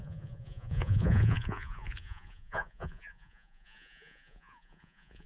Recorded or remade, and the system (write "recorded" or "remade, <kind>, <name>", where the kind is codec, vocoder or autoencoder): remade, vocoder, Vocos